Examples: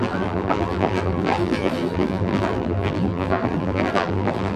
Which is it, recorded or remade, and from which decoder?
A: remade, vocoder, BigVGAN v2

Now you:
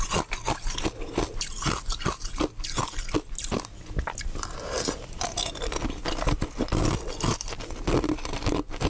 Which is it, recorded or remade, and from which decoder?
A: recorded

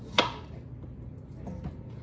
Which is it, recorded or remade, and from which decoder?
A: recorded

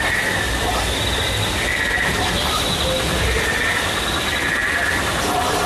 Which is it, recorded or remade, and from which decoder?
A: recorded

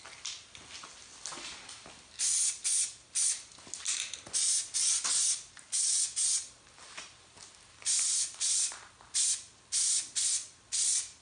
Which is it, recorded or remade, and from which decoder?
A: recorded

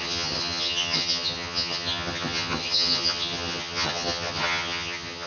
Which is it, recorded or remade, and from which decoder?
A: remade, vocoder, HiFi-GAN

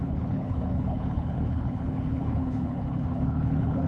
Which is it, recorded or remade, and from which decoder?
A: remade, codec, HILCodec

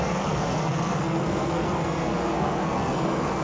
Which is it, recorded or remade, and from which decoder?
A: remade, codec, SNAC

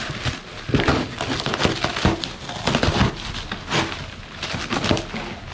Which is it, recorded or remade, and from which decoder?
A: recorded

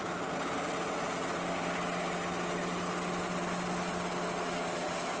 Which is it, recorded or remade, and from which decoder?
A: recorded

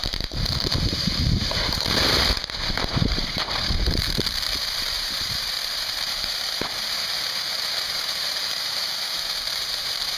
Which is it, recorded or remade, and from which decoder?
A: remade, vocoder, BigVGAN v2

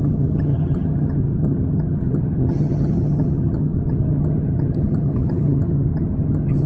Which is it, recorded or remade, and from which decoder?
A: remade, vocoder, HiFi-GAN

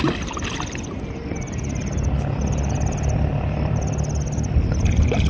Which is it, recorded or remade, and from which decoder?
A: recorded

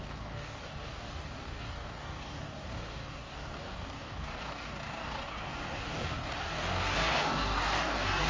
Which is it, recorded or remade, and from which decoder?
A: remade, codec, DAC